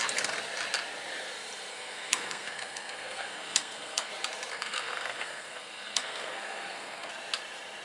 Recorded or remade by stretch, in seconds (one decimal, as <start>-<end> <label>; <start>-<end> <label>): 0.0-1.7 recorded; 1.7-4.1 remade; 4.1-4.5 recorded; 4.5-7.1 remade; 7.1-7.8 recorded